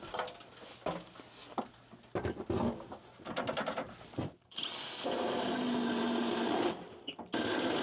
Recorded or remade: recorded